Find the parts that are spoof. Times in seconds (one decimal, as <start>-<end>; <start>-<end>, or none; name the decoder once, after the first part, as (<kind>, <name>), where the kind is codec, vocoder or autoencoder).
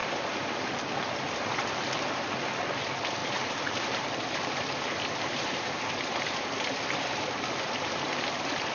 3.2-5.7 (vocoder, BigVGAN v2)